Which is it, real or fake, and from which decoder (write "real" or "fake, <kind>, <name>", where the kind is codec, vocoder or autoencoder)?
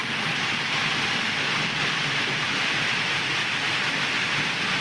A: real